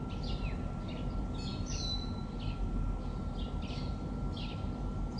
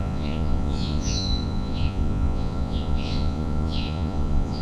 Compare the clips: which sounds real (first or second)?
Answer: first